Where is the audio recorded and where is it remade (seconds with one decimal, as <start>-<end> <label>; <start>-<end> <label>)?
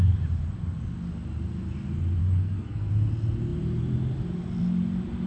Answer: 0.0-2.2 recorded; 2.2-2.9 remade; 2.9-5.3 recorded